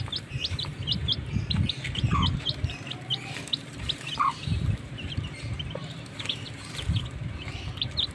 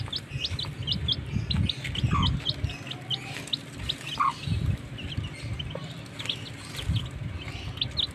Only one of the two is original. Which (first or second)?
second